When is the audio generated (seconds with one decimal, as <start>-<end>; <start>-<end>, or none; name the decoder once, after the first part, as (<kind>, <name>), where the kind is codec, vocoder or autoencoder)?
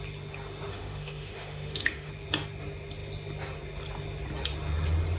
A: 0.7-2.1 (autoencoder, DAC-VAE)